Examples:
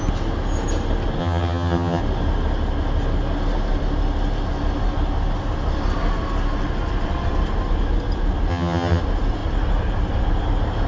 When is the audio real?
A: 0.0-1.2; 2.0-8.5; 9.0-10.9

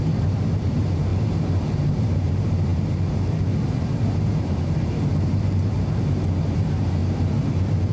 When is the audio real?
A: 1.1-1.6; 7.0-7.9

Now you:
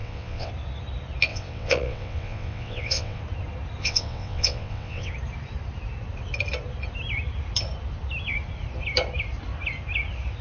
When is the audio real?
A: 0.5-1.3; 3.2-3.8; 5.1-10.4